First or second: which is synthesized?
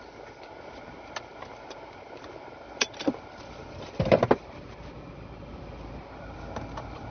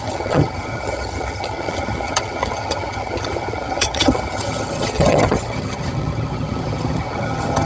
second